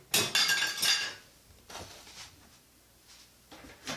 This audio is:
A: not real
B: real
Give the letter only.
B